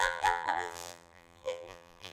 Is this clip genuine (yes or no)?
no